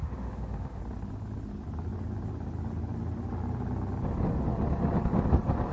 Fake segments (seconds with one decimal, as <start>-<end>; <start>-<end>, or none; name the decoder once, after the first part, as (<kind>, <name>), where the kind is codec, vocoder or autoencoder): 0.0-0.8 (autoencoder, DAC-VAE)